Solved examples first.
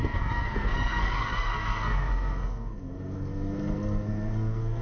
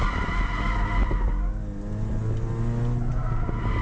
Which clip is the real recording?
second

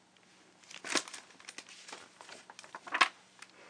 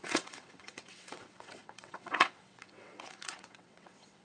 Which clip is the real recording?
first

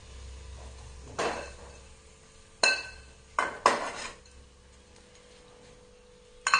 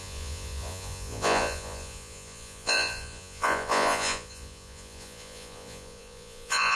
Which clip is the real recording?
first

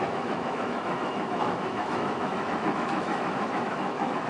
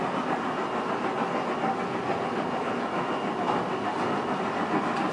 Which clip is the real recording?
second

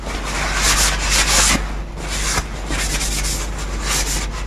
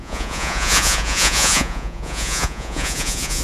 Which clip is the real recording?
first